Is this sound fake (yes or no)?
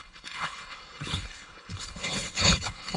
yes